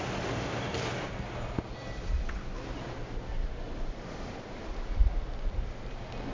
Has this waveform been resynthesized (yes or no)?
no